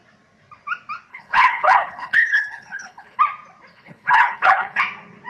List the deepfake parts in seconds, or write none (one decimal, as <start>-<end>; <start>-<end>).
1.1-3.2; 3.7-4.8